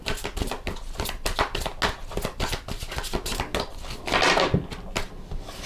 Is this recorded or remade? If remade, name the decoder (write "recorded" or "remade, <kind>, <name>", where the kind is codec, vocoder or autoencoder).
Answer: recorded